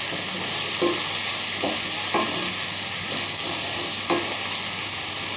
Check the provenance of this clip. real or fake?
real